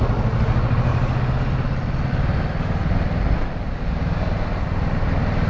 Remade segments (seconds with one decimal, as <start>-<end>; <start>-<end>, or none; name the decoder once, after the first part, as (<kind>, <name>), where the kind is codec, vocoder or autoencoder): none